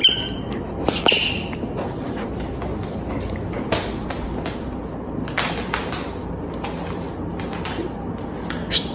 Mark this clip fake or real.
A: real